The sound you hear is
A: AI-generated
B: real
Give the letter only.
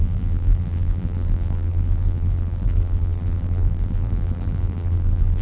A